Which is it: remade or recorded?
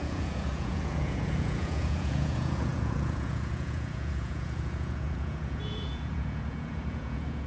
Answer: remade